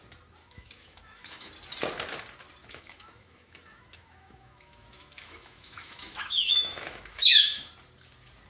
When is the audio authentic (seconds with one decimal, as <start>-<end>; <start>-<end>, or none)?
0.0-0.4; 1.5-2.6; 7.7-8.5